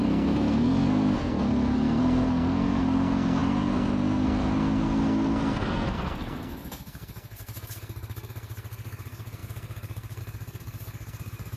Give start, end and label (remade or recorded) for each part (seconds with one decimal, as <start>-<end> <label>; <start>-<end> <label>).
0.0-11.6 remade